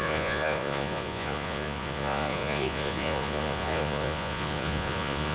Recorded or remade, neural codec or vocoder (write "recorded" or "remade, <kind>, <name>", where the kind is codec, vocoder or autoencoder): remade, vocoder, Vocos